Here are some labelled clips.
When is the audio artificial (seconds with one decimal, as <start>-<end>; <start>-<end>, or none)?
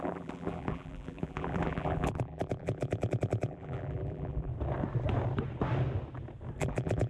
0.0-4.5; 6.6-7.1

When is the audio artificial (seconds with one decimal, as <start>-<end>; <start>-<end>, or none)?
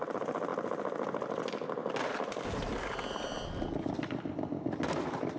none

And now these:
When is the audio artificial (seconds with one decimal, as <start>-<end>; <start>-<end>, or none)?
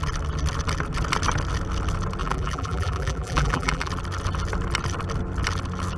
2.2-3.9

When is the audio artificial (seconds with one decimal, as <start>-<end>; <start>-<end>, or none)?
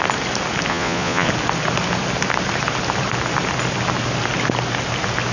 0.7-1.3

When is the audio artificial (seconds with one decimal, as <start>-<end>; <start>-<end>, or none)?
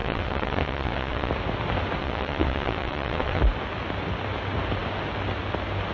0.0-1.3; 2.0-3.4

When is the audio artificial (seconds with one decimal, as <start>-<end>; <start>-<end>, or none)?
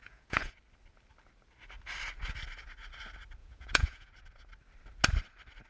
0.0-0.6; 3.4-4.1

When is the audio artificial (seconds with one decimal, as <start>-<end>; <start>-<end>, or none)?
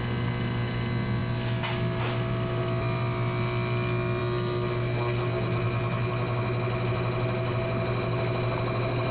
none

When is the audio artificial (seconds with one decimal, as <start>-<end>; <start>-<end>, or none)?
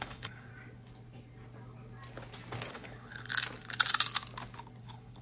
0.0-0.5; 2.7-3.3; 4.8-5.2